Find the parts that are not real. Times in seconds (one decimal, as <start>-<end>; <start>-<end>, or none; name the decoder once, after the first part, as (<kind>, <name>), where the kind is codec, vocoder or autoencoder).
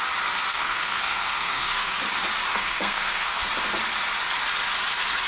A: 0.5-2.0 (codec, SNAC); 2.5-3.4